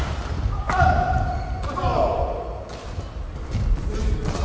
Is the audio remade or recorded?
recorded